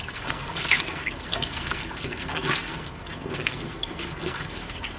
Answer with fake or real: fake